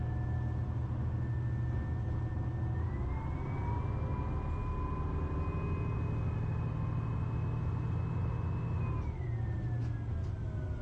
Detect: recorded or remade recorded